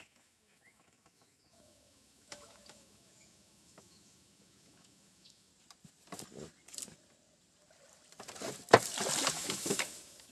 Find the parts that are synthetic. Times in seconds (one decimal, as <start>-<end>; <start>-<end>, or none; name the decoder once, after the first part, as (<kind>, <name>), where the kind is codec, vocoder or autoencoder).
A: 0.0-5.5 (autoencoder, DAC-VAE); 9.3-10.3